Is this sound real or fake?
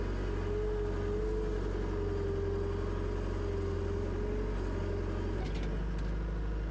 real